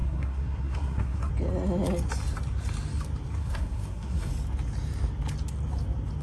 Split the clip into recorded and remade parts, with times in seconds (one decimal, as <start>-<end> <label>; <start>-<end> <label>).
0.0-1.3 remade; 1.3-3.4 recorded; 3.4-4.3 remade; 4.3-6.2 recorded